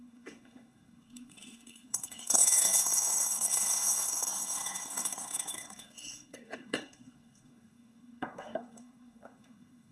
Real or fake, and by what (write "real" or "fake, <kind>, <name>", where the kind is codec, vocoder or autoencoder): fake, codec, SNAC